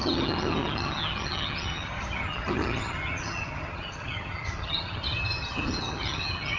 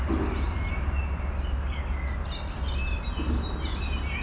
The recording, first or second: second